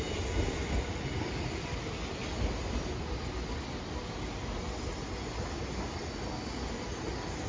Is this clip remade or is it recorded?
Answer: recorded